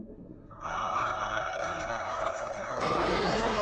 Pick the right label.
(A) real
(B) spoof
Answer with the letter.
B